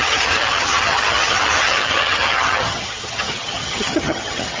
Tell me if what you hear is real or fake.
fake